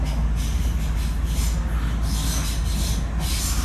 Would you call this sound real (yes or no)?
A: yes